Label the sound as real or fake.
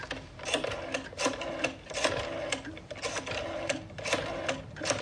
real